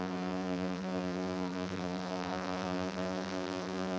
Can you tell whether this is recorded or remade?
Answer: remade